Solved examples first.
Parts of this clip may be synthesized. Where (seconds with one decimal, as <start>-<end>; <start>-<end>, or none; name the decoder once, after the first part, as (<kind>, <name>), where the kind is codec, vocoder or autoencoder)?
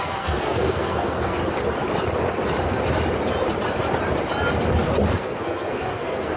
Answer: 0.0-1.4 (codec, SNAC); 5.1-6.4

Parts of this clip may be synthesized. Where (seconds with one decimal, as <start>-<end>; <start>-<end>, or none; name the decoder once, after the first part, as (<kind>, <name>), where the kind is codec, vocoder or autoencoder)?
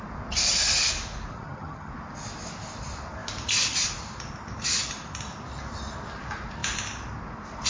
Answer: 1.3-1.9 (vocoder, HiFi-GAN)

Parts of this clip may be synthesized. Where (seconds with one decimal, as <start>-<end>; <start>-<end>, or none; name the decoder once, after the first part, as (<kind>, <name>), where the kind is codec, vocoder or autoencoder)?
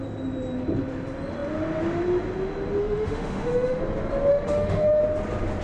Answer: 2.8-3.8 (autoencoder, DAC-VAE); 4.3-5.0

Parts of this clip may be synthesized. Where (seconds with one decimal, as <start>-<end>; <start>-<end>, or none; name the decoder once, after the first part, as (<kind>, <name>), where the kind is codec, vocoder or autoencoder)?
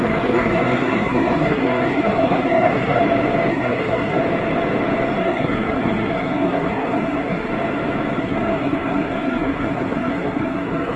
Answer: 0.0-3.0 (codec, SNAC); 3.5-4.2; 5.2-7.5; 8.2-11.0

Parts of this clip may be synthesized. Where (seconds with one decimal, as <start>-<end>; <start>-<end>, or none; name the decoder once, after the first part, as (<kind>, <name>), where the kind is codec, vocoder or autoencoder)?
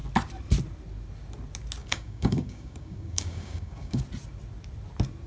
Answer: 1.8-4.0 (codec, DAC)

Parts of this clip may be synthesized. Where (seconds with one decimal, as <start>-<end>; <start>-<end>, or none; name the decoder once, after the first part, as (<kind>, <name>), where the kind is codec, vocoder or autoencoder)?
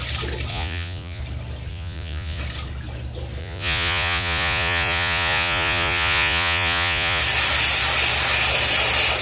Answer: 0.5-1.2 (vocoder, Vocos); 1.7-2.4; 3.4-7.2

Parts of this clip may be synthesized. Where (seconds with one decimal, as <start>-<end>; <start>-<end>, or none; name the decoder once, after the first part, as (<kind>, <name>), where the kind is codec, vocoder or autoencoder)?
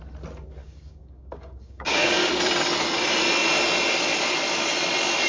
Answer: 0.6-2.3 (codec, DAC)